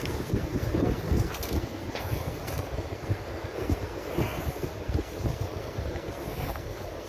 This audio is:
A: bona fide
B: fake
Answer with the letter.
B